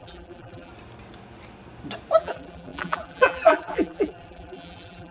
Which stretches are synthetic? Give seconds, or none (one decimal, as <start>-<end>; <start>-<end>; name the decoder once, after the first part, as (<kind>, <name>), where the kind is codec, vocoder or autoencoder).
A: 0.0-0.7 (vocoder, BigVGAN v2); 2.2-5.1